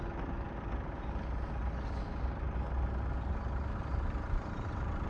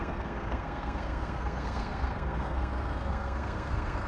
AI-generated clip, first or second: second